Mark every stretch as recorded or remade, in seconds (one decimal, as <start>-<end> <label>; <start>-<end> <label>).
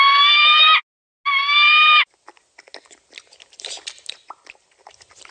0.0-5.3 recorded